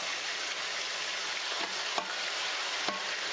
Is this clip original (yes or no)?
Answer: yes